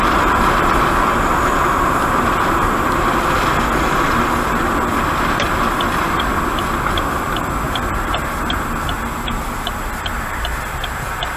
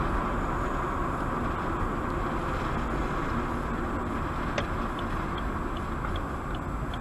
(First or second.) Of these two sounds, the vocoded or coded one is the first